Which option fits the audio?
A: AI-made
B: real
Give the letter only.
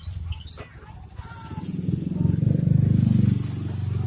B